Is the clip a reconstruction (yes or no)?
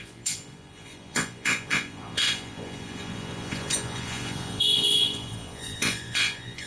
yes